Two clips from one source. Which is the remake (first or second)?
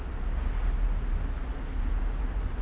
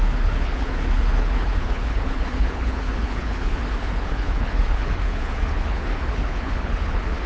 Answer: second